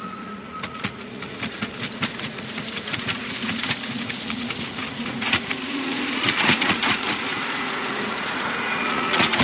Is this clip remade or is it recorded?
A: remade